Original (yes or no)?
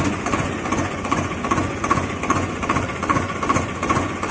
no